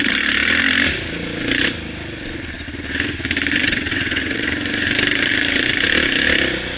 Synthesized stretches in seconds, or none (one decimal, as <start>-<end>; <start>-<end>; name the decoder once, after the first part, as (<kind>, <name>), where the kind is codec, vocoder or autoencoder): 3.6-4.5 (vocoder, WaveNeXt)